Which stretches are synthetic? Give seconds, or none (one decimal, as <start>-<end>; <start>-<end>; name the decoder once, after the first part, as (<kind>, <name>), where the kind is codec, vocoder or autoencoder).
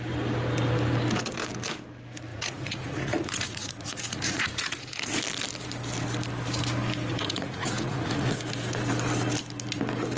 2.3-5.2 (vocoder, Vocos); 7.1-8.3